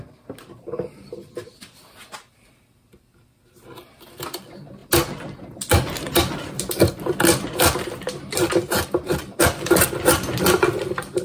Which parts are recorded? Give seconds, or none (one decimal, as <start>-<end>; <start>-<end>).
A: 0.0-11.2